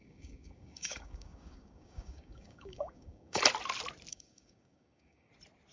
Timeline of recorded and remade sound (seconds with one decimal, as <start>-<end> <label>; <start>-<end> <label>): 0.0-3.4 remade; 3.4-4.1 recorded; 4.1-5.3 remade; 5.3-5.7 recorded

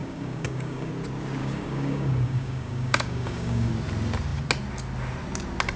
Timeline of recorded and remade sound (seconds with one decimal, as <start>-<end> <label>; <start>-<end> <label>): 0.0-0.9 remade; 0.9-1.4 recorded; 1.4-3.7 remade; 3.7-5.8 recorded

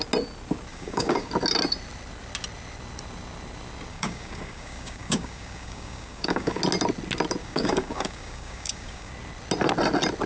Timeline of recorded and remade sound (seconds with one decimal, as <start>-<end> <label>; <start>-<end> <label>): 0.0-0.7 recorded; 0.7-1.3 remade; 1.3-3.9 recorded; 3.9-6.6 remade; 6.6-7.4 recorded; 7.4-9.1 remade; 9.1-10.3 recorded